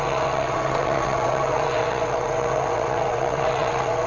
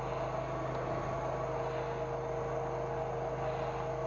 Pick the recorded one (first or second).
second